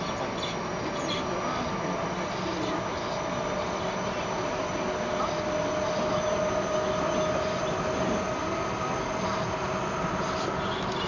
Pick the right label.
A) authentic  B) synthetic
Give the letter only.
A